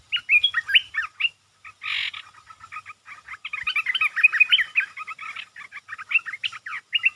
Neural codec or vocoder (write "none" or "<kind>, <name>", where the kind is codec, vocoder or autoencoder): none